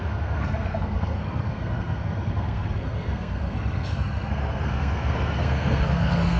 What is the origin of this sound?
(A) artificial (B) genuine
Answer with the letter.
A